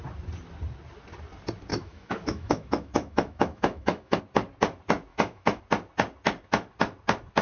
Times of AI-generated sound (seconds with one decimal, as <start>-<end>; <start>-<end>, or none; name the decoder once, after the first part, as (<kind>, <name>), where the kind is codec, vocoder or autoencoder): 1.7-4.2 (autoencoder, DAC-VAE); 5.1-5.6